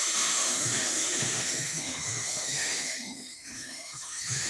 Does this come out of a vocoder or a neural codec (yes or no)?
yes